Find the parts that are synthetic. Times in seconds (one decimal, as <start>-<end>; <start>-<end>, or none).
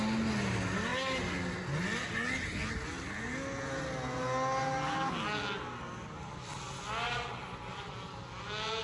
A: none